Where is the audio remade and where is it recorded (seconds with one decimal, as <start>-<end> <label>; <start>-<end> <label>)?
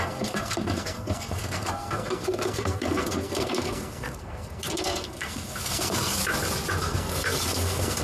0.0-6.2 remade; 6.2-6.8 recorded; 6.8-8.0 remade